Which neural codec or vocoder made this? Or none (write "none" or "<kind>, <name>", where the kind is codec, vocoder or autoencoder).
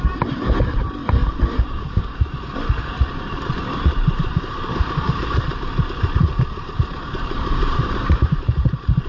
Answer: vocoder, BigVGAN v2